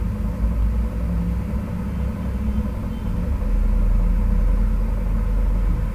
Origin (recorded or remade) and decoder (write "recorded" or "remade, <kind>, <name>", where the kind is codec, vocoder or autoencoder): recorded